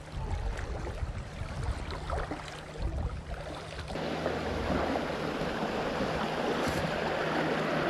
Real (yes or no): yes